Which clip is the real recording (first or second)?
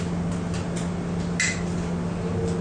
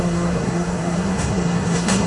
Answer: first